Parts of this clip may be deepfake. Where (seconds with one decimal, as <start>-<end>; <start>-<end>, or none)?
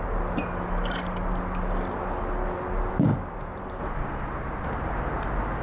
none